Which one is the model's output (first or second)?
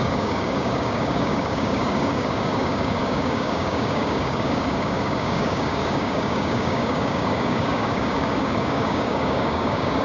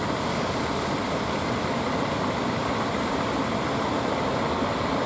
first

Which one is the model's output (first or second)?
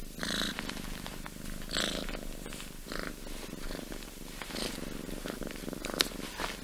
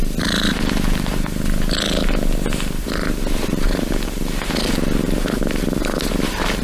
second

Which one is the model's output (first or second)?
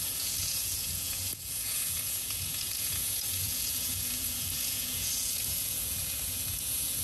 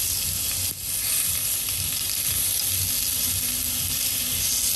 first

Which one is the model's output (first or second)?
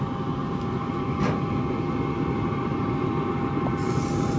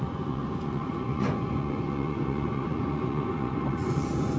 second